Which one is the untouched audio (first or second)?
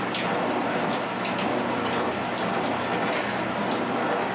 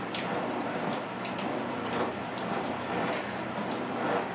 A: first